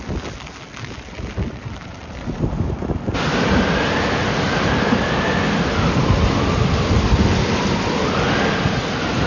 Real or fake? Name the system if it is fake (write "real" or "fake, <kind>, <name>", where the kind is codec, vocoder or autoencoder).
real